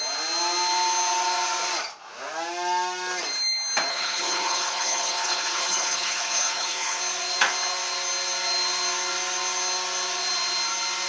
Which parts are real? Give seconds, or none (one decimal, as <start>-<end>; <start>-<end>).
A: 0.0-3.9; 7.0-11.1